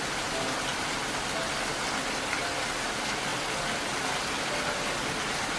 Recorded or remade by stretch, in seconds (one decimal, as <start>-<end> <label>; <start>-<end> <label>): 0.0-5.6 recorded